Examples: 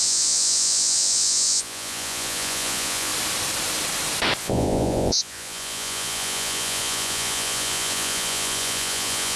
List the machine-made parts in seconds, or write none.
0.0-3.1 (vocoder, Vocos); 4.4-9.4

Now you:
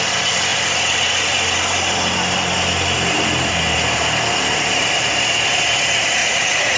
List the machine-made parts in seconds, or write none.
6.2-6.8 (vocoder, Vocos)

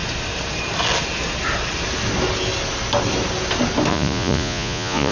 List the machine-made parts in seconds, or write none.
3.9-5.1 (vocoder, Vocos)

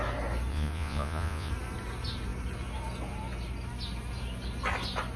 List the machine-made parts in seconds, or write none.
0.5-1.5 (vocoder, Vocos)

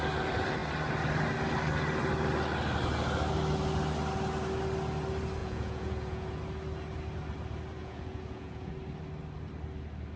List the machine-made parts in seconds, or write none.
5.4-6.4 (vocoder, Vocos); 7.8-8.7

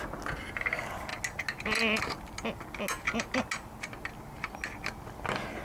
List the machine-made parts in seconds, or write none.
none